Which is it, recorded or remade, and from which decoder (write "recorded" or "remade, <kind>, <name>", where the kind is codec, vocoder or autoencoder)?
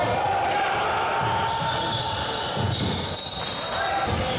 recorded